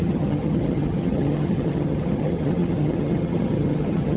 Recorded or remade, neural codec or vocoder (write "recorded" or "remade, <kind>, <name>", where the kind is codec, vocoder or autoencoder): remade, vocoder, HiFi-GAN